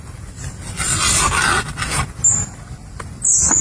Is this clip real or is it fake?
real